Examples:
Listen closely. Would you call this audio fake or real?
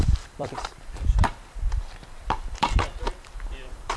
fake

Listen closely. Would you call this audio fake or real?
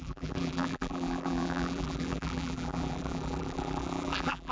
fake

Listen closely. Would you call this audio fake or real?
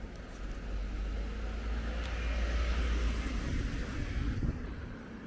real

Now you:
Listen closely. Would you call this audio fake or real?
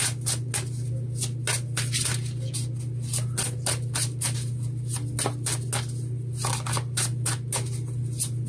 real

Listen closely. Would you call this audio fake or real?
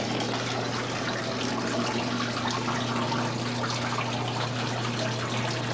real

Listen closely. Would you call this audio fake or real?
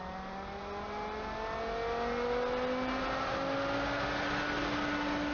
real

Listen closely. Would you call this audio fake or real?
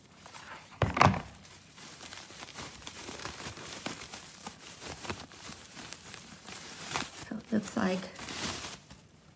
fake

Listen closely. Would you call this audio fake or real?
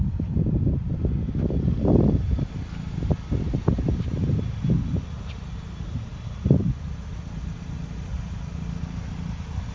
real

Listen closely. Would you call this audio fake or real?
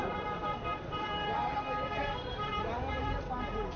fake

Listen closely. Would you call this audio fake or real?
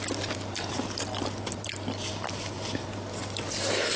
real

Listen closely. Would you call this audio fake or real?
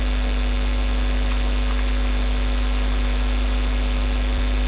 real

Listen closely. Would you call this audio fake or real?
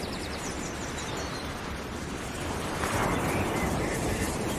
fake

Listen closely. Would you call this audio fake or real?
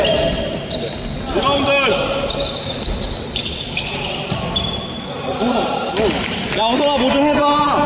real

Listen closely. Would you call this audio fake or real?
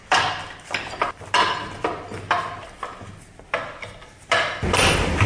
real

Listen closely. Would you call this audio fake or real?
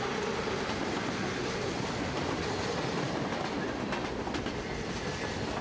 real